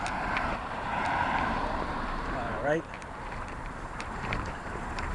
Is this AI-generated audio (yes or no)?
yes